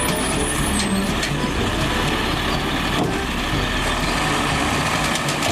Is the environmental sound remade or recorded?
recorded